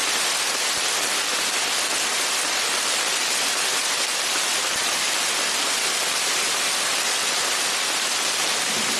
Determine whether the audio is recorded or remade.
recorded